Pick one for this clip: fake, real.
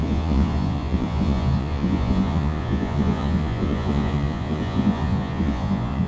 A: fake